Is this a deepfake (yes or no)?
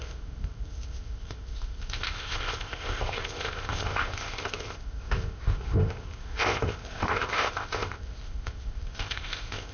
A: yes